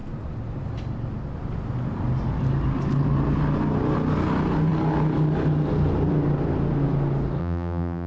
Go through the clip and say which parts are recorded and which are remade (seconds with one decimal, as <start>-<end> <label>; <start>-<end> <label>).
0.0-7.4 recorded; 7.4-8.1 remade